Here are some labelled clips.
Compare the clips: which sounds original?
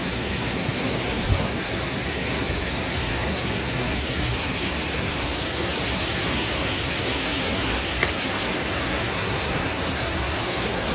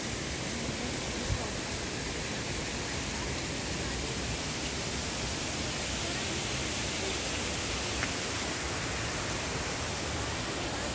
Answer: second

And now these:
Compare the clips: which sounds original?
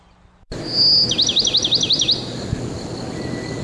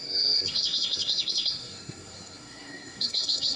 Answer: first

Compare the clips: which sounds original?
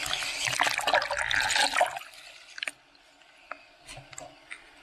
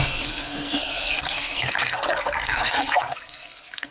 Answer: first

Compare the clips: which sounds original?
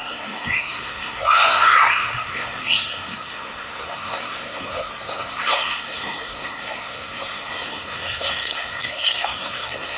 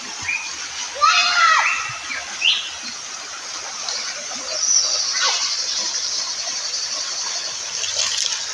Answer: second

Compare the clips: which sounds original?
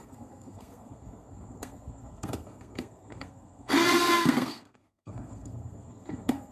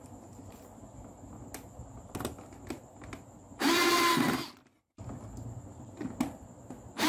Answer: second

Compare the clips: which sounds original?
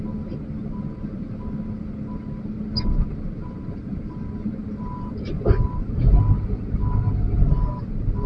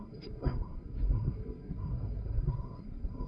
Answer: first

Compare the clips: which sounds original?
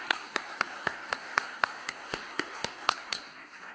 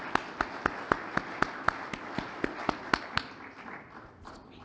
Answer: second